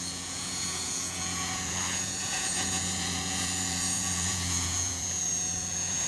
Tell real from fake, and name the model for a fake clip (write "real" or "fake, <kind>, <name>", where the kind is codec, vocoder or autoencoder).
fake, vocoder, Vocos